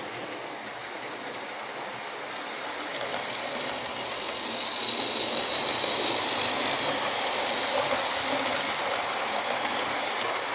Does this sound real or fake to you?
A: real